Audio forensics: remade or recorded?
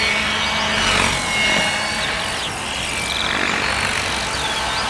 recorded